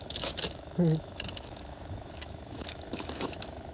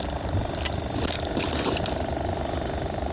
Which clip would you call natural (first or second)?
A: second